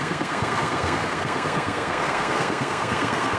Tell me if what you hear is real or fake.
fake